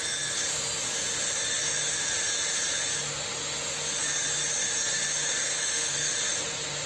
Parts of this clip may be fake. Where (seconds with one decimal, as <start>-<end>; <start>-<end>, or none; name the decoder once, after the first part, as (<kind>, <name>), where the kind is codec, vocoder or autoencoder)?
5.4-6.1 (codec, SNAC)